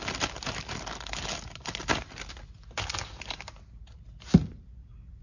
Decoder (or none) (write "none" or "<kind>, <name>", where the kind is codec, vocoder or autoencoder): none